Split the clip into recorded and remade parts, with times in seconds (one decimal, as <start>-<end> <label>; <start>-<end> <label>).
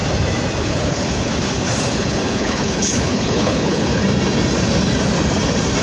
0.0-0.6 recorded; 0.6-1.3 remade; 1.3-2.0 recorded; 2.0-4.0 remade; 4.0-5.8 recorded